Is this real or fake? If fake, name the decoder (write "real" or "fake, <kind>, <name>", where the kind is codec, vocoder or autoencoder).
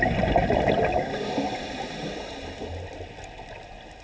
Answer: real